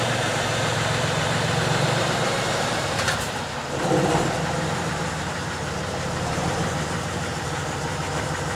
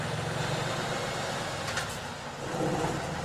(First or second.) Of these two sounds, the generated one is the first